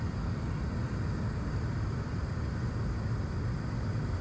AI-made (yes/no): yes